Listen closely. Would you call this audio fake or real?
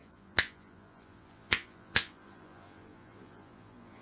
fake